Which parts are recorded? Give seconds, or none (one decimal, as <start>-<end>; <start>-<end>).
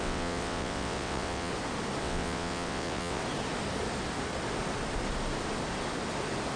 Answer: 1.5-2.0; 3.2-6.6